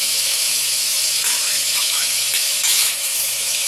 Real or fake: fake